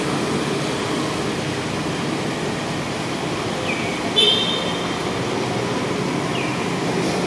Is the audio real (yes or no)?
yes